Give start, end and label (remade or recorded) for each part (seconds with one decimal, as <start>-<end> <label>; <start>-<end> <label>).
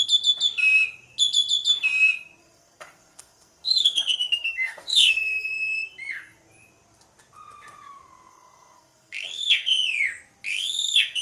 0.0-2.4 recorded; 2.4-5.5 remade; 5.5-8.3 recorded; 8.3-9.8 remade; 9.8-10.5 recorded; 10.5-11.2 remade